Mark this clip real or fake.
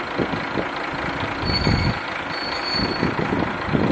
real